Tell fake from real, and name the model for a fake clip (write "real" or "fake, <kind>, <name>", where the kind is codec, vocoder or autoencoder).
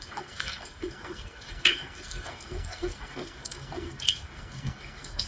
fake, codec, SNAC